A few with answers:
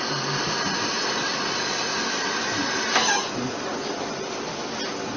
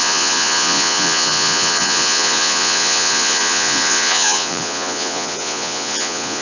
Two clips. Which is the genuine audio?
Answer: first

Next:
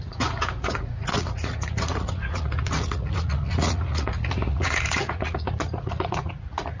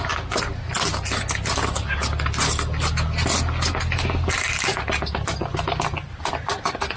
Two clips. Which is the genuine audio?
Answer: second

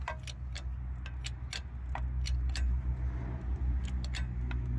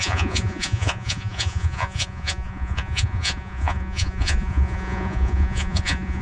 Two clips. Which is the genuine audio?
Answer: first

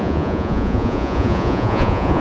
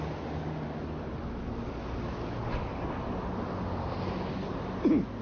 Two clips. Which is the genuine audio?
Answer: second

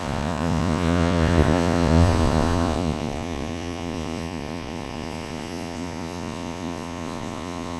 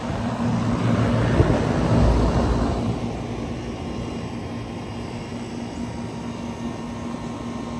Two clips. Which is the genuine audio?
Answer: second